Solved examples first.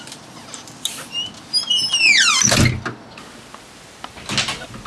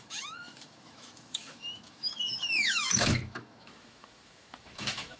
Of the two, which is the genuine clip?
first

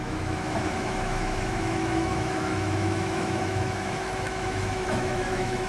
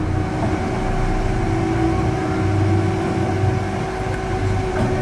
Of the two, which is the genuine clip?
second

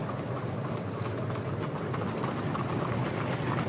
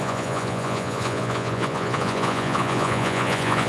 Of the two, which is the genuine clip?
first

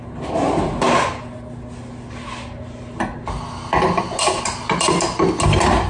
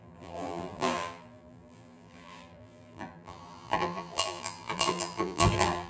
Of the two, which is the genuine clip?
first